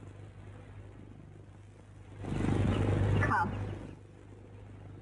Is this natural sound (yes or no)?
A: yes